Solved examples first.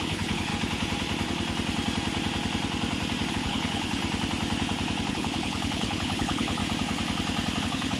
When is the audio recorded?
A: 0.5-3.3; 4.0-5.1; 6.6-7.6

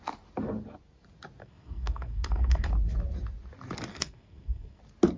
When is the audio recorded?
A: 0.0-1.4; 2.7-3.9; 4.8-5.2

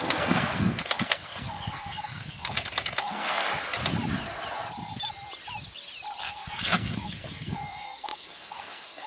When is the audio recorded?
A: 3.4-6.2

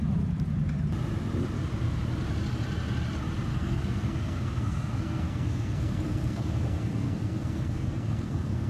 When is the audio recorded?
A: 0.0-3.5

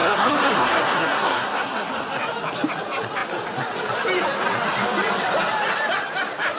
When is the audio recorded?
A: 1.9-6.6

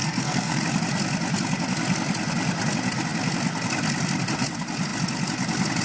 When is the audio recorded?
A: 0.6-5.8